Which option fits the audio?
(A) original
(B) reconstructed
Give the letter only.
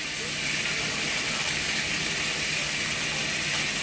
A